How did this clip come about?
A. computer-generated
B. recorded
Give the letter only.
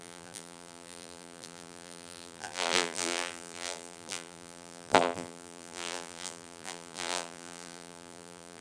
A